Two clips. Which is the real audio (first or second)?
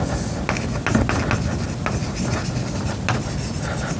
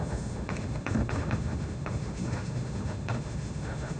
first